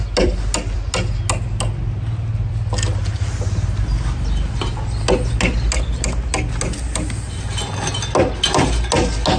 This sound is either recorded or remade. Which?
recorded